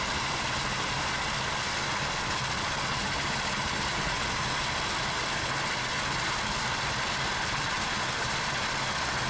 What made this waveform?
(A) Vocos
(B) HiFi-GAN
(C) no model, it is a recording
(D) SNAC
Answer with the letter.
C